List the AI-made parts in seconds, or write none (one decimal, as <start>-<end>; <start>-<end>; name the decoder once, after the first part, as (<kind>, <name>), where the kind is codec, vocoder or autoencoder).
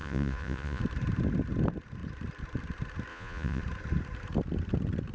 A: 0.0-0.8 (vocoder, Vocos); 3.1-3.6